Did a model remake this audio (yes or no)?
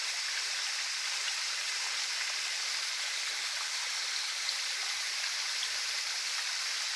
no